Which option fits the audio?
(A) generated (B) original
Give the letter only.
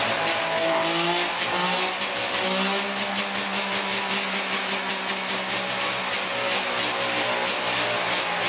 B